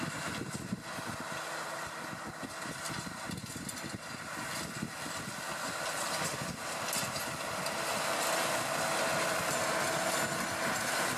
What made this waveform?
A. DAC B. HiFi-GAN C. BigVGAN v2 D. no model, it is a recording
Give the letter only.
D